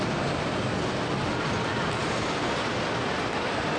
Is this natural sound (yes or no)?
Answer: yes